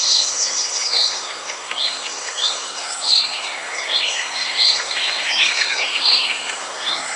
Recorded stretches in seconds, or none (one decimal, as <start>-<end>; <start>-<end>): none